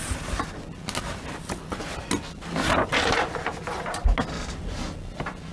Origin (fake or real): real